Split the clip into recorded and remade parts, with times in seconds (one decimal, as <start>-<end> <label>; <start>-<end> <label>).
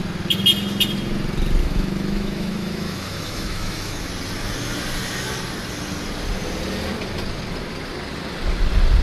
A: 0.0-1.6 recorded; 1.6-4.1 remade; 4.1-9.0 recorded